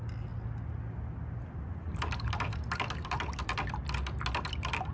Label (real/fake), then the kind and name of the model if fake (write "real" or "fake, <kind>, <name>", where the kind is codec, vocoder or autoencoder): real